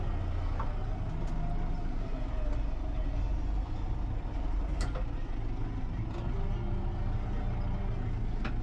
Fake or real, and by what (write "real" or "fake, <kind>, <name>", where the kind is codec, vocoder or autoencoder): real